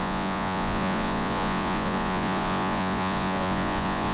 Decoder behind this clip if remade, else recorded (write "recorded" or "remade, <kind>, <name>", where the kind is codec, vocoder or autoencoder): remade, vocoder, Vocos